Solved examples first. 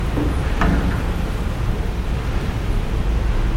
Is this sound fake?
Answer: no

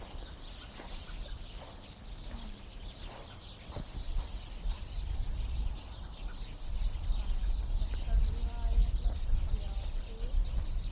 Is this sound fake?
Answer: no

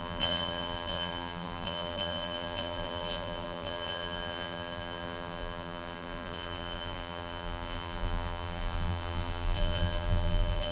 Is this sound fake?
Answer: yes